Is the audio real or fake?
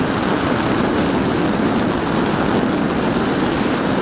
real